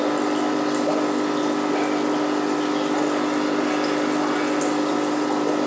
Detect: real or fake real